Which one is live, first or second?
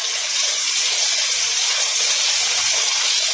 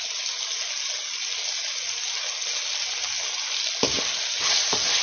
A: second